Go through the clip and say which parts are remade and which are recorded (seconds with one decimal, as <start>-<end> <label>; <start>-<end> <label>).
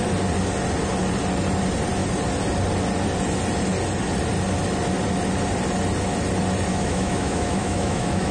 0.0-6.7 recorded; 6.7-8.3 remade